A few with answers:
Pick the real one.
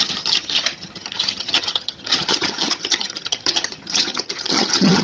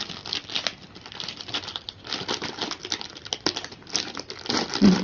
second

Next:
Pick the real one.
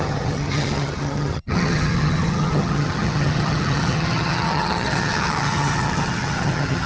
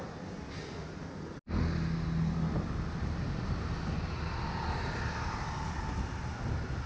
second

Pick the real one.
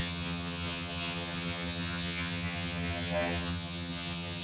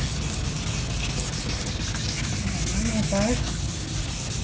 second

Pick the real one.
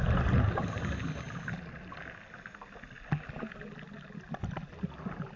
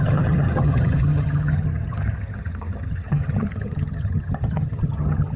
first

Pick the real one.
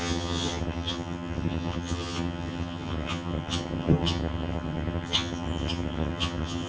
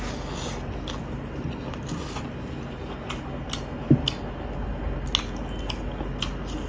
second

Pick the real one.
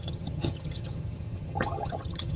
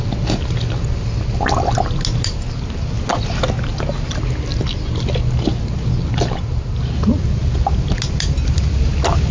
second